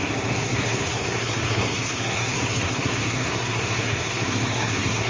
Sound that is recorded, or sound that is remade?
remade